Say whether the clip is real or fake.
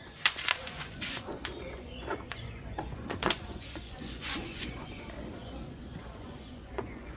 fake